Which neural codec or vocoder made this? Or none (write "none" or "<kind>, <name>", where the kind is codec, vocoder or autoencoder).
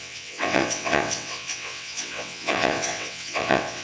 vocoder, WaveNeXt